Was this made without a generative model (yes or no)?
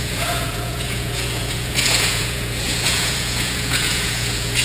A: no